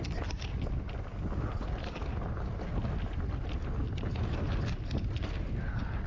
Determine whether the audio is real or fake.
real